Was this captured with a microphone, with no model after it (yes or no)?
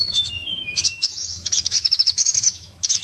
no